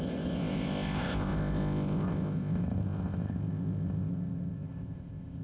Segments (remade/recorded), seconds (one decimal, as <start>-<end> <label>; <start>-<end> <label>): 0.0-5.4 remade